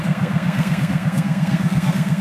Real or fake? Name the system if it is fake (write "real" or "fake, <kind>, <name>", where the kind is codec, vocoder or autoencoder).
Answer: fake, codec, SNAC